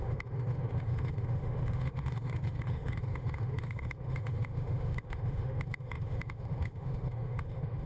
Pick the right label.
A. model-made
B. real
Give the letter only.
A